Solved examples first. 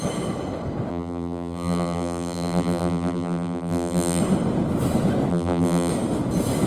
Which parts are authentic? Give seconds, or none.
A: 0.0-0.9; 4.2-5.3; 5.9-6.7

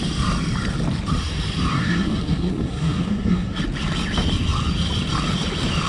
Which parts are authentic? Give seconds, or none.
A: 0.0-1.7; 3.6-5.9

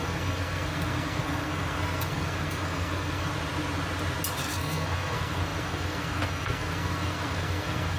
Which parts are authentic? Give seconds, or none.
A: 3.3-4.4

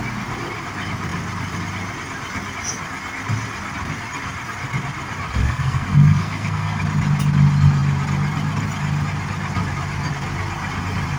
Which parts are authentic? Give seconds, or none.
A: 0.0-5.4; 6.8-11.2

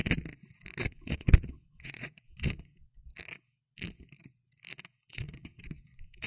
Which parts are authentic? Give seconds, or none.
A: 0.0-0.9; 3.0-5.1

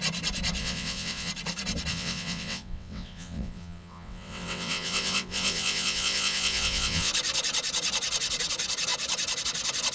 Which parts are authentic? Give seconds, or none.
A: 0.0-0.6; 1.3-1.9; 7.1-9.9